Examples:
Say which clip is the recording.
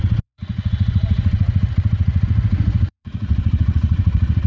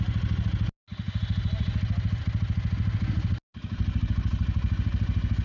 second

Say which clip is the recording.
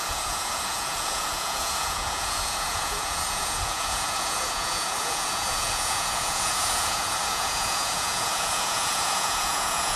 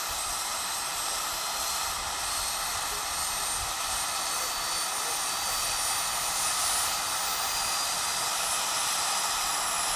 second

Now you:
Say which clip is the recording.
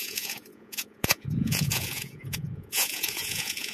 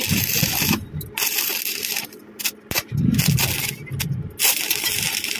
second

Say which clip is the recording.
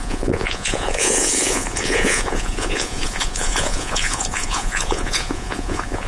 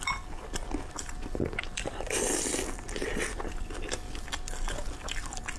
second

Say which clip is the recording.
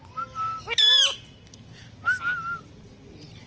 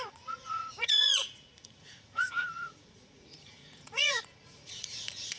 first